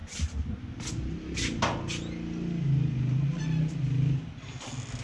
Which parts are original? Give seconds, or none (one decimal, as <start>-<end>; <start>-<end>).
0.0-5.0